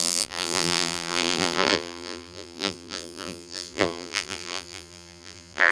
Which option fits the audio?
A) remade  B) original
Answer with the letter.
A